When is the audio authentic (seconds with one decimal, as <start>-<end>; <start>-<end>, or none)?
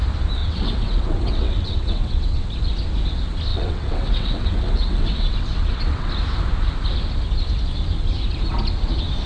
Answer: 0.0-0.4; 2.5-3.5; 6.1-9.3